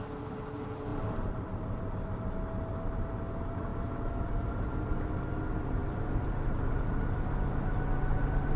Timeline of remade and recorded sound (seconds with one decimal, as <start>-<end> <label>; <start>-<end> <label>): 0.0-0.9 recorded; 0.9-2.0 remade; 2.0-8.6 recorded